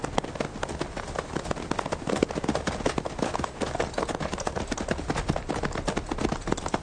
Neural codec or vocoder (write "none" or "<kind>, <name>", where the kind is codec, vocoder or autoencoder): none